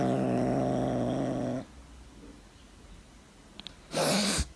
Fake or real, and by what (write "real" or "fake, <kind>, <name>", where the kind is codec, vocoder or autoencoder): real